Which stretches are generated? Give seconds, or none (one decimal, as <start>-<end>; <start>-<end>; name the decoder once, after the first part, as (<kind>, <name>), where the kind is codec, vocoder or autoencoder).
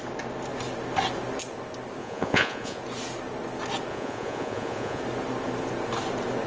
2.0-2.8 (vocoder, Vocos); 3.9-5.0